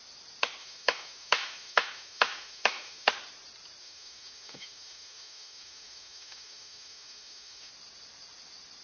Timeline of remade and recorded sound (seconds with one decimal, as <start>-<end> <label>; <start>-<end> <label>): 0.0-0.6 recorded; 0.6-3.1 remade; 3.1-3.8 recorded; 3.8-7.7 remade; 7.7-8.8 recorded